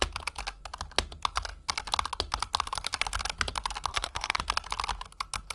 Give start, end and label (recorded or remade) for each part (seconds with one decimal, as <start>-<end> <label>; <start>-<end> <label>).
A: 0.0-3.9 recorded; 3.9-4.4 remade; 4.4-5.5 recorded

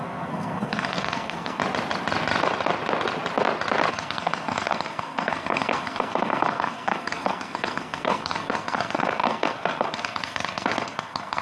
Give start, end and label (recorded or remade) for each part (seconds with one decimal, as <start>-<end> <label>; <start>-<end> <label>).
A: 0.0-1.6 remade; 1.6-3.9 recorded; 3.9-11.4 remade

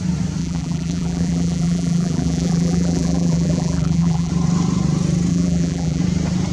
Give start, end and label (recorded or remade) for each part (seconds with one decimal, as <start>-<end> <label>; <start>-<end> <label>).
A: 0.0-0.4 recorded; 0.4-4.3 remade; 4.3-5.3 recorded; 5.3-6.0 remade; 6.0-6.5 recorded

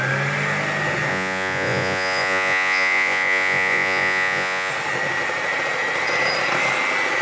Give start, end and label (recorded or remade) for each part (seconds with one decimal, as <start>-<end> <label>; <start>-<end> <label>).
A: 0.0-1.1 recorded; 1.1-4.7 remade; 4.7-7.2 recorded